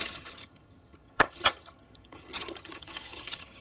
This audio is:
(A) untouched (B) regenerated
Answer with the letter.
B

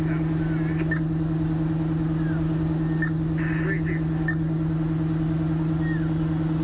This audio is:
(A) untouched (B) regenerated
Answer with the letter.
A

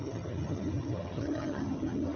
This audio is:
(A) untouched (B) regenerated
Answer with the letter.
B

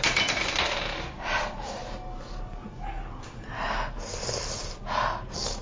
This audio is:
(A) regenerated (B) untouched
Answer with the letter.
B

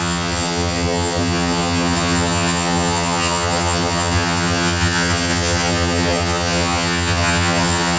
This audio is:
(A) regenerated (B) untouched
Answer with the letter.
A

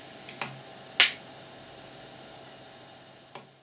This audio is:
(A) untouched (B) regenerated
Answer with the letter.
A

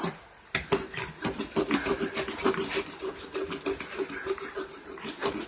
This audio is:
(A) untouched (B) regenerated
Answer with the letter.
A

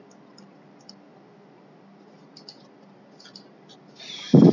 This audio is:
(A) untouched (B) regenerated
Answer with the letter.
A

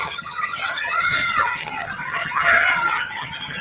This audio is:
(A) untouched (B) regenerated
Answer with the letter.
B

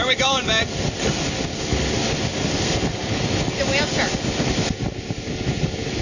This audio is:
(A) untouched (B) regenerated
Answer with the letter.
A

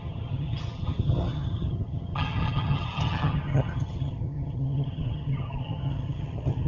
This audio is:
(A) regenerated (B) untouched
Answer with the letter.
A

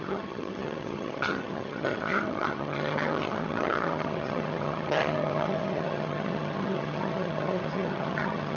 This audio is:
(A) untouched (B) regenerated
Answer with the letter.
B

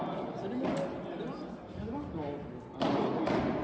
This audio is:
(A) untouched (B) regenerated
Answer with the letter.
A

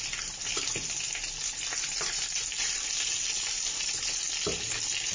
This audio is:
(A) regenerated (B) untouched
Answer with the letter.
B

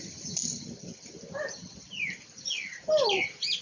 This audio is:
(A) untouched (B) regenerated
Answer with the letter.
A